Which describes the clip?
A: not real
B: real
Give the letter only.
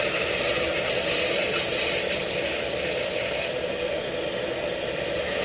B